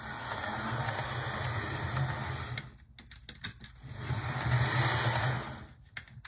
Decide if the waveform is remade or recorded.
recorded